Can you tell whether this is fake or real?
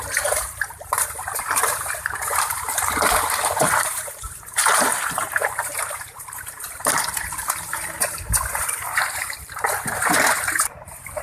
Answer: fake